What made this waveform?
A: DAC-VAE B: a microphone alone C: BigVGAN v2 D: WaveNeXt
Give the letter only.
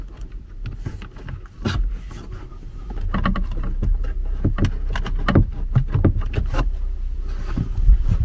B